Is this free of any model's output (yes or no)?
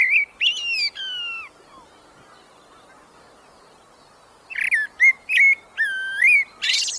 yes